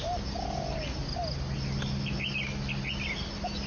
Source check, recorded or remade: recorded